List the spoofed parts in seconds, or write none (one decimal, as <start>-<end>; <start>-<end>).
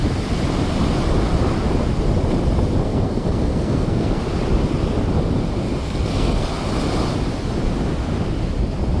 2.8-4.2; 5.8-6.5